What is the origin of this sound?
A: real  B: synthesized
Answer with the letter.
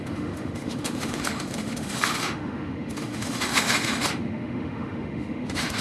B